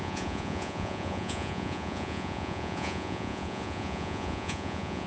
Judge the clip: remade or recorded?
remade